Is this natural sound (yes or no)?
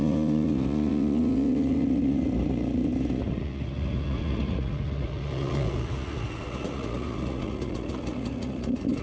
no